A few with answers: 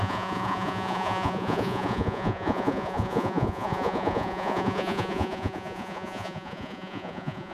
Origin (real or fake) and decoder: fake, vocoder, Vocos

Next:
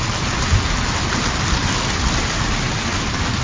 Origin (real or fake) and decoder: real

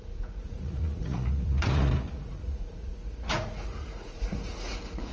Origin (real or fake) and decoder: fake, vocoder, Vocos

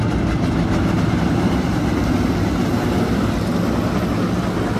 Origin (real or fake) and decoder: real